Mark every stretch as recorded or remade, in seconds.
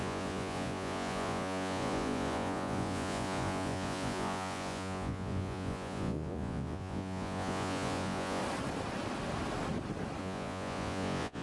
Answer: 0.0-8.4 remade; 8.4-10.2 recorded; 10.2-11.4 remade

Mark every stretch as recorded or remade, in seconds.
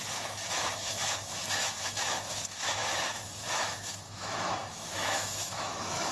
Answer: 0.0-6.1 remade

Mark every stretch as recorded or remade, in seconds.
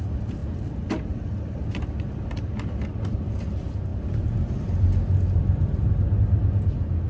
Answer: 0.0-0.4 recorded; 0.4-3.3 remade; 3.3-3.9 recorded; 3.9-6.2 remade; 6.2-7.1 recorded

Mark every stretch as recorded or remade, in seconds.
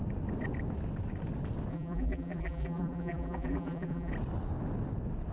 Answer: 0.0-1.7 recorded; 1.7-4.1 remade; 4.1-5.3 recorded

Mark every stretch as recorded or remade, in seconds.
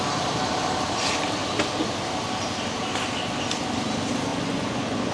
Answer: 0.0-4.3 recorded; 4.3-5.1 remade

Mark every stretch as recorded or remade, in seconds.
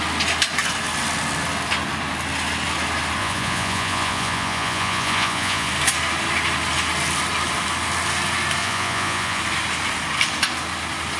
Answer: 0.0-3.2 recorded; 3.2-5.7 remade; 5.7-8.6 recorded; 8.6-9.4 remade; 9.4-11.2 recorded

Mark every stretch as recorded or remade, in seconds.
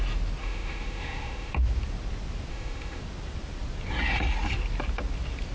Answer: 0.0-0.4 recorded; 0.4-1.5 remade; 1.5-2.5 recorded; 2.5-3.0 remade; 3.0-5.5 recorded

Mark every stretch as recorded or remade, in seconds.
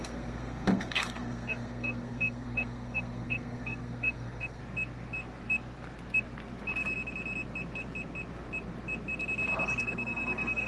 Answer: 0.0-4.6 remade; 4.6-9.8 recorded; 9.8-10.7 remade